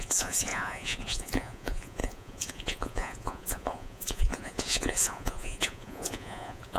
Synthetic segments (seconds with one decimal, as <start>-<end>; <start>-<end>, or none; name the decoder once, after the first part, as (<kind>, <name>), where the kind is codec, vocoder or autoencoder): 0.0-6.8 (vocoder, Vocos)